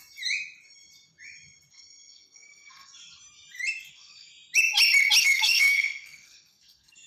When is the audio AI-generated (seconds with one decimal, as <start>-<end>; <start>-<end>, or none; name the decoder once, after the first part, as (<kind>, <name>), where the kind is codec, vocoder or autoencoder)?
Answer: 1.7-2.9 (codec, SNAC); 3.9-4.3; 5.2-7.1

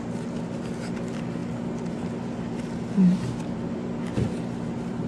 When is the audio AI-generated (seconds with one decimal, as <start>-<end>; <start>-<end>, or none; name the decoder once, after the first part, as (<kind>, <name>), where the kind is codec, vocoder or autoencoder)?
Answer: none

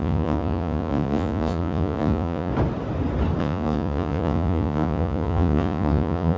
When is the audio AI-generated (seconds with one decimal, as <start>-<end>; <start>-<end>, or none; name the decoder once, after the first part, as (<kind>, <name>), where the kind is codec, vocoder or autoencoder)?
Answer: 0.0-2.5 (vocoder, Vocos); 3.4-6.4

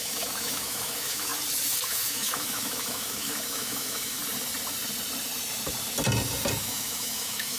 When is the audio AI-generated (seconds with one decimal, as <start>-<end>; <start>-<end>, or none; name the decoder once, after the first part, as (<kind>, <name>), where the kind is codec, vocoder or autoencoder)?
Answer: 0.0-1.3 (autoencoder, DAC-VAE); 1.8-4.2; 6.6-7.6